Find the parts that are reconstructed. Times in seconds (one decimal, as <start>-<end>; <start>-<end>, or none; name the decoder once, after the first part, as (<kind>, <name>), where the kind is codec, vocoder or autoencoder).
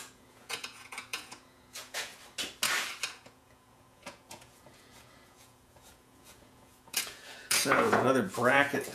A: 0.0-2.1 (vocoder, Vocos); 3.1-8.9